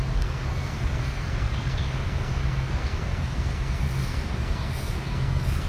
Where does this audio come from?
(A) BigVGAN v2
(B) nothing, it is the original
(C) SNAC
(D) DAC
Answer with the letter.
C